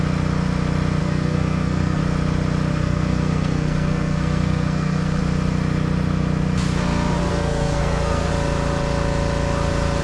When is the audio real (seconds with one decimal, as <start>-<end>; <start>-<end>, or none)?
0.0-1.0; 2.0-2.7; 5.2-7.3; 8.3-10.0